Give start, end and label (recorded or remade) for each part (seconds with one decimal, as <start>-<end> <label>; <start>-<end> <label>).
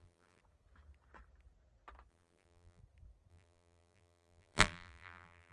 0.0-0.4 remade; 0.4-2.1 recorded; 2.1-2.8 remade; 2.8-3.3 recorded; 3.3-5.5 remade